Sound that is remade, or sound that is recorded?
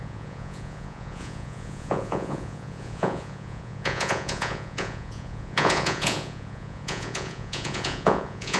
remade